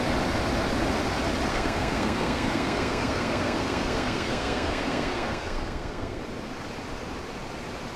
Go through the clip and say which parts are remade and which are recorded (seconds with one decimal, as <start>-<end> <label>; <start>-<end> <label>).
0.0-1.5 recorded; 1.5-6.2 remade; 6.2-8.0 recorded